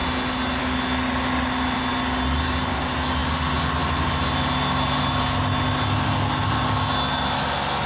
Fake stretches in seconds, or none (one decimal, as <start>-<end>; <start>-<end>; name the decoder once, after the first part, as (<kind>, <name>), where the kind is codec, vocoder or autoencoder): none